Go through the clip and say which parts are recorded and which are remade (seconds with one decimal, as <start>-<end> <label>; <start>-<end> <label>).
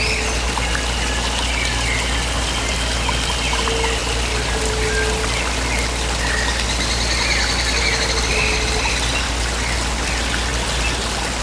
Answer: 0.0-4.0 recorded; 4.0-8.8 remade; 8.8-11.4 recorded